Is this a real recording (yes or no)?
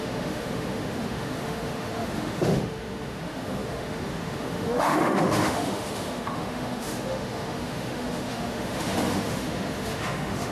no